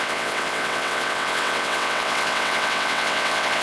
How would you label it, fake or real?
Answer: fake